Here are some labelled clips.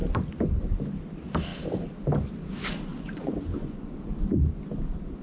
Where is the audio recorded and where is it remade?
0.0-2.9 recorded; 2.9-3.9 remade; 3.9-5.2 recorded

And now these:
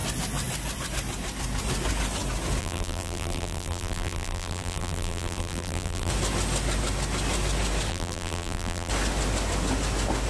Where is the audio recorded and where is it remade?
0.0-2.6 recorded; 2.6-6.1 remade; 6.1-7.9 recorded; 7.9-8.9 remade; 8.9-10.3 recorded

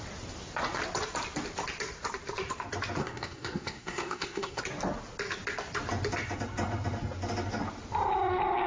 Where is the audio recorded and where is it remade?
0.0-3.0 recorded; 3.0-4.6 remade; 4.6-8.7 recorded

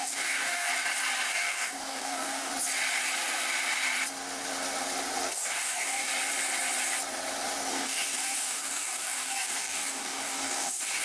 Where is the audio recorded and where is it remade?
0.0-0.7 remade; 0.7-1.3 recorded; 1.3-2.5 remade; 2.5-5.3 recorded; 5.3-6.1 remade; 6.1-7.7 recorded; 7.7-11.0 remade

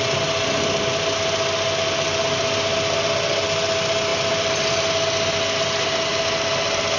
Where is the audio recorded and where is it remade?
0.0-4.1 recorded; 4.1-4.9 remade; 4.9-7.0 recorded

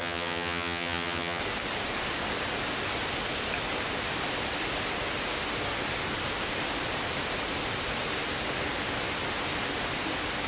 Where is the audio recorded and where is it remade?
0.0-1.4 remade; 1.4-10.5 recorded